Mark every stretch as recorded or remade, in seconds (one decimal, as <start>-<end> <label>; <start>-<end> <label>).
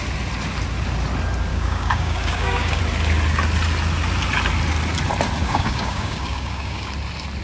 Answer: 0.0-1.5 recorded; 1.5-2.8 remade; 2.8-5.4 recorded; 5.4-6.9 remade; 6.9-7.4 recorded